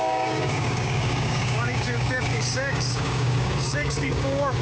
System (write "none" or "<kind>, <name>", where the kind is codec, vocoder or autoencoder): codec, DAC